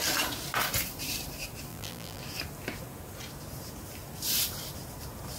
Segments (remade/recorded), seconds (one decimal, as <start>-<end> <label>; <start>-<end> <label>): 0.0-1.7 recorded; 1.7-2.2 remade; 2.2-5.4 recorded